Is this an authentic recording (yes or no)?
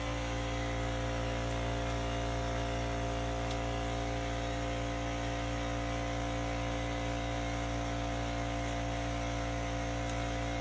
yes